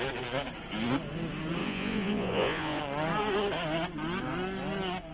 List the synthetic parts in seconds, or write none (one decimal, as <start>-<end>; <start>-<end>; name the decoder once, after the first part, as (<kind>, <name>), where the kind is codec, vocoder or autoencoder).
1.6-2.8 (vocoder, Vocos)